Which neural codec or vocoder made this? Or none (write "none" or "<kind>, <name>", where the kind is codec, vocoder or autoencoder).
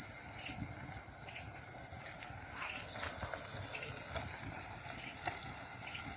none